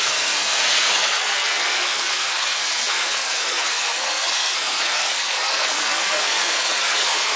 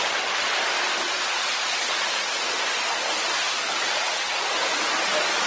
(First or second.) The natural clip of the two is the second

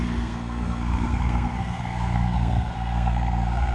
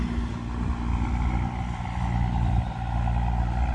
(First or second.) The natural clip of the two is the second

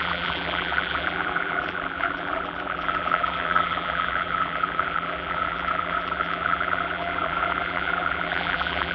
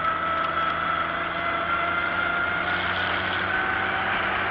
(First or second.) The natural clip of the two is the second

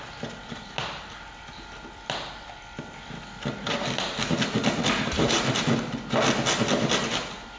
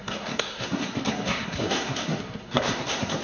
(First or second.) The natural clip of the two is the first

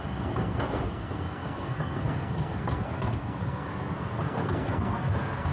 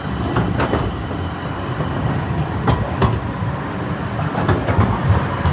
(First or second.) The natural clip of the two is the second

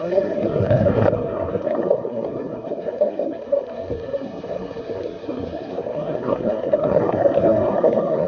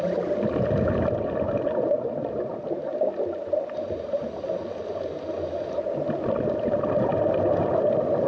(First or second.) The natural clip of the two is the second